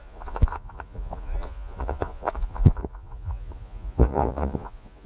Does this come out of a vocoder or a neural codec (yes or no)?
yes